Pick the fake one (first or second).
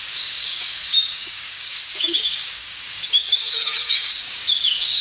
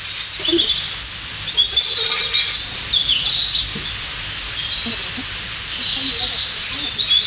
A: first